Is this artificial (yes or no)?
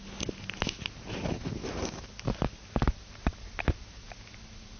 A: no